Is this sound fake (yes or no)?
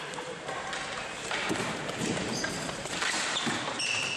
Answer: yes